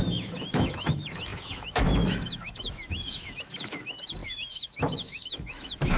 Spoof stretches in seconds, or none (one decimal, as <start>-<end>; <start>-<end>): 0.0-6.0